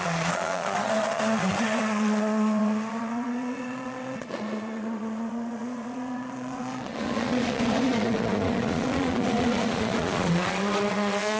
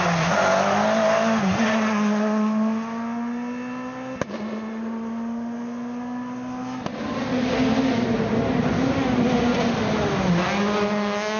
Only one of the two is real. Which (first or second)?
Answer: second